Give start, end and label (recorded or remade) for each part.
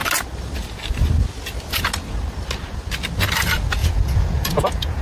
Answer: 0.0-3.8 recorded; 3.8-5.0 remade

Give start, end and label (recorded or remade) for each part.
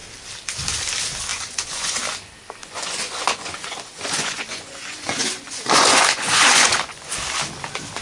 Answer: 0.0-1.3 recorded; 1.3-2.0 remade; 2.0-2.6 recorded; 2.6-7.1 remade; 7.1-8.0 recorded